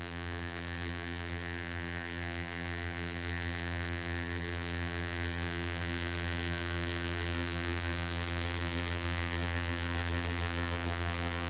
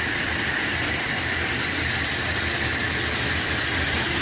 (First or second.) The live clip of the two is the second